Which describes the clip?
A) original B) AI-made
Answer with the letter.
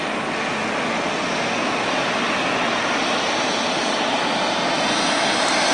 A